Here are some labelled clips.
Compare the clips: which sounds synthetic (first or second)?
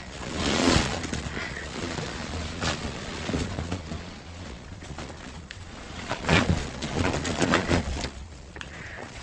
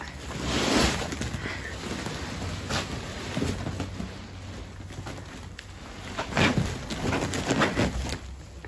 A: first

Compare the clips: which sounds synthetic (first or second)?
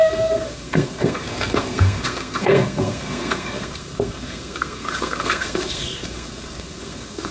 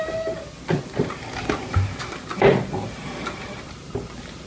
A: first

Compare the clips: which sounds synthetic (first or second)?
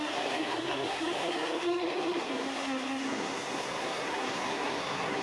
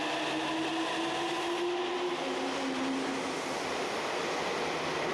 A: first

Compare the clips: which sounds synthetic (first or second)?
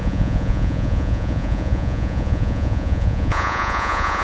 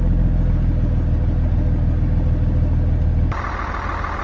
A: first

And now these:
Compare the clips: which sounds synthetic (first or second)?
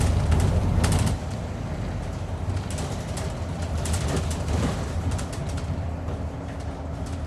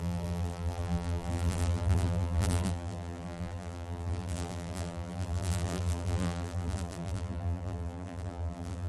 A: second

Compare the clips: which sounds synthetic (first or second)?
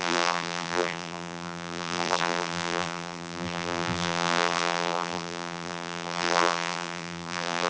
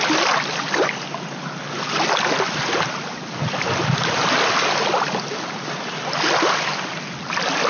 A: first